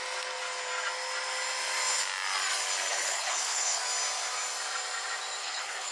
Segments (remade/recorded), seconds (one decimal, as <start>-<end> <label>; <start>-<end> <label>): 0.0-2.9 recorded; 2.9-3.8 remade; 3.8-5.4 recorded; 5.4-5.9 remade